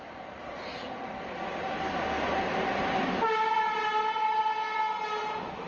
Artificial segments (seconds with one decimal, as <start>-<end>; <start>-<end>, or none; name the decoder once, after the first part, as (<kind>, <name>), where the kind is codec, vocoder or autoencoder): none